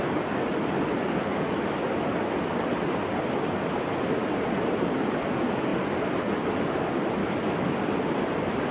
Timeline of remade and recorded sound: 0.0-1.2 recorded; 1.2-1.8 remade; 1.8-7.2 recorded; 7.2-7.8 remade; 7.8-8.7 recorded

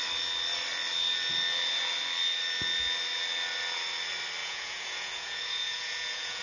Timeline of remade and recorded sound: 0.0-4.4 recorded; 4.4-6.4 remade

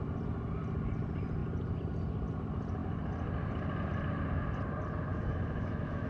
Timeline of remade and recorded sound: 0.0-5.1 recorded; 5.1-6.1 remade

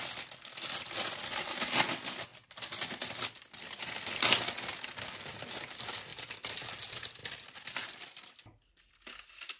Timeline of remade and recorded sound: 0.0-6.1 recorded; 6.1-6.7 remade; 6.7-7.2 recorded; 7.2-7.8 remade; 7.8-9.6 recorded

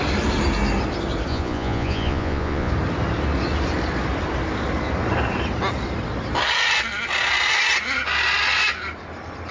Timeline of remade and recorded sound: 0.0-1.3 recorded; 1.3-2.7 remade; 2.7-9.5 recorded

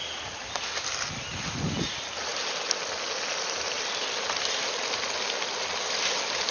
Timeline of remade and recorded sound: 0.0-0.9 recorded; 0.9-2.3 remade; 2.3-5.8 recorded; 5.8-6.5 remade

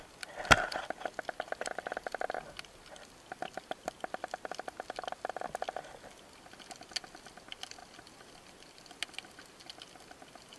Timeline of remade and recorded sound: 0.0-10.6 recorded